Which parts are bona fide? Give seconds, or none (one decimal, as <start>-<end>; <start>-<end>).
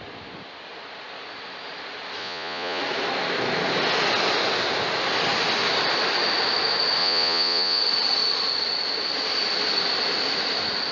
0.0-2.2; 2.8-7.0; 7.8-10.9